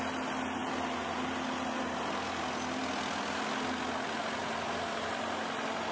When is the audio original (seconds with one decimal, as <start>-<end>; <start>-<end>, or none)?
0.0-5.9